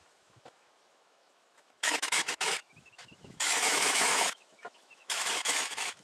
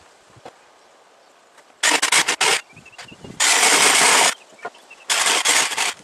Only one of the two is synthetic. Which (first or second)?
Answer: first